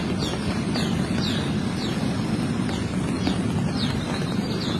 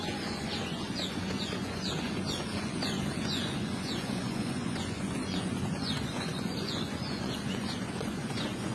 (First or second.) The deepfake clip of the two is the second